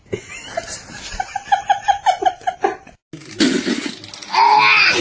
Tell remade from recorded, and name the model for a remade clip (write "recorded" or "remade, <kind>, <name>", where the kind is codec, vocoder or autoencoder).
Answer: recorded